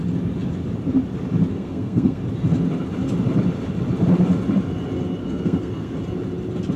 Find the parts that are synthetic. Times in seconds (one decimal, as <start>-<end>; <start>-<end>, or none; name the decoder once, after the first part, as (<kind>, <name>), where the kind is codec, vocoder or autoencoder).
1.5-2.2 (codec, SNAC); 5.2-5.9